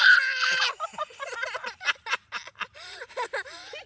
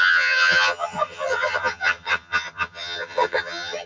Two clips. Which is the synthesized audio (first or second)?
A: second